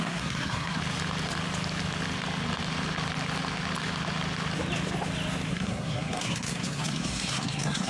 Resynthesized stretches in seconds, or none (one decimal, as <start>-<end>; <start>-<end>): 0.0-0.8; 5.5-7.9

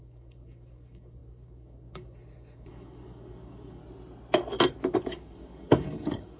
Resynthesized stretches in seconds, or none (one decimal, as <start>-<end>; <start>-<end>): 0.0-3.8; 5.0-6.4

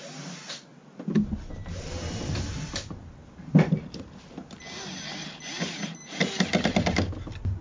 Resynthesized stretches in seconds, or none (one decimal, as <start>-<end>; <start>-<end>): none

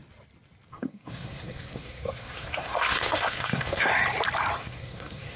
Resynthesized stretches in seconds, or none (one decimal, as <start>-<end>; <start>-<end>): 0.7-3.9; 4.6-5.4

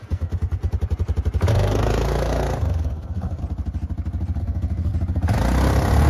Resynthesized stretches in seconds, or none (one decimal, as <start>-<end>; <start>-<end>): 0.0-0.6; 1.5-3.4; 4.4-4.9